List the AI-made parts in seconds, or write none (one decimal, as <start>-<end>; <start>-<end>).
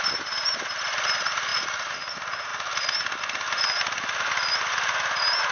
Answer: none